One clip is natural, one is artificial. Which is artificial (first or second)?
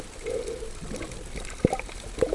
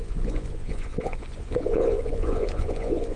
second